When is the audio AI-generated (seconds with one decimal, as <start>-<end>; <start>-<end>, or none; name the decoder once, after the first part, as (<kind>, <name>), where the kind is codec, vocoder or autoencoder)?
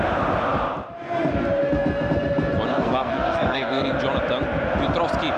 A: 2.7-4.0 (codec, SNAC)